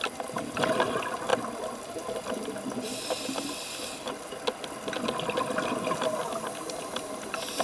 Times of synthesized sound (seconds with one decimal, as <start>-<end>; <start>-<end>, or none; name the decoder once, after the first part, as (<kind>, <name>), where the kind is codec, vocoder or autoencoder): none